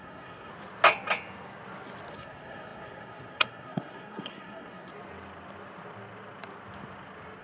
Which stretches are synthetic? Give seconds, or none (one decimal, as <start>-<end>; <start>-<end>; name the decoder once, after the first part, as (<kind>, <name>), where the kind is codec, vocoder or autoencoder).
0.0-0.5 (codec, SNAC); 2.1-4.9